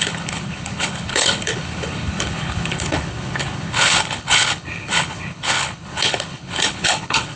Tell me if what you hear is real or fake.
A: fake